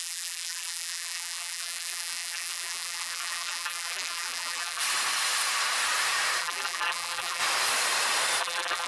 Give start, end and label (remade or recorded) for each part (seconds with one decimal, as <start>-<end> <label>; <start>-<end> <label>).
0.0-4.8 remade; 4.8-6.4 recorded; 6.4-7.4 remade; 7.4-8.4 recorded; 8.4-8.9 remade